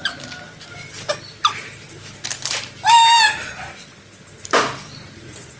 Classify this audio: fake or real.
real